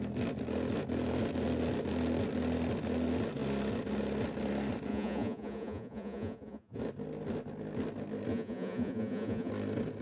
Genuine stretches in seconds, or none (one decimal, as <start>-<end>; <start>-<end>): 0.0-4.9; 6.8-8.3; 9.5-10.0